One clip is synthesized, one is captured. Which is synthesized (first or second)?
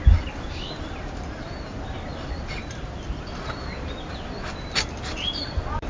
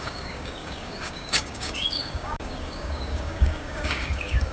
second